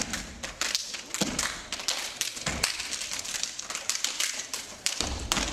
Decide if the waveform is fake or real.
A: fake